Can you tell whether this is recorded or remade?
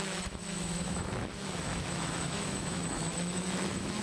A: remade